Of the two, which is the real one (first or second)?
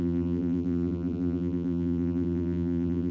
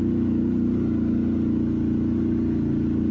second